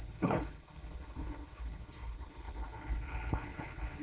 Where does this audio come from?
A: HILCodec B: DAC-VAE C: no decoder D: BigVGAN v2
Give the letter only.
A